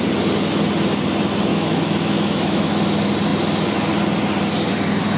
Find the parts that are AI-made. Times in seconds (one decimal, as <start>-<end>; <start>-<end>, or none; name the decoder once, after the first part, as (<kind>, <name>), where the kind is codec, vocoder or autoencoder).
1.5-2.7 (autoencoder, DAC-VAE)